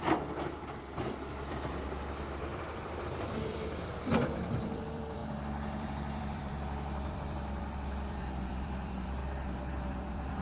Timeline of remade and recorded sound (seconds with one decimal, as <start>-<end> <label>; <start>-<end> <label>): 0.0-9.2 remade; 9.2-9.8 recorded; 9.8-10.4 remade